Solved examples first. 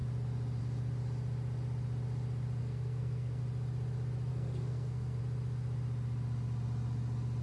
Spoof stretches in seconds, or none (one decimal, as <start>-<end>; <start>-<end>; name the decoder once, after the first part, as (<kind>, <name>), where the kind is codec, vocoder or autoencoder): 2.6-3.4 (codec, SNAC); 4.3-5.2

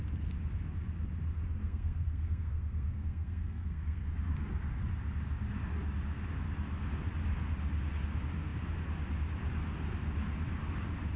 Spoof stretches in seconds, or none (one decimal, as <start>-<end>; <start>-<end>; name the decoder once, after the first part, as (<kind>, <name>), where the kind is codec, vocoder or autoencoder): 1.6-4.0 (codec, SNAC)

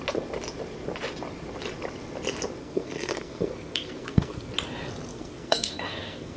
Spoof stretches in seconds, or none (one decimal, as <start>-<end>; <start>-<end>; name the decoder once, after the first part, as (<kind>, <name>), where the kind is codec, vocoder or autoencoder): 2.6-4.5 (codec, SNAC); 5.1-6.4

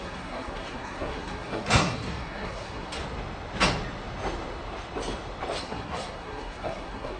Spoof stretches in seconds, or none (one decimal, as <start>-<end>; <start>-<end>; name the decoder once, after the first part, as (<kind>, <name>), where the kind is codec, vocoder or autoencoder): 0.0-3.0 (codec, SNAC); 5.6-7.2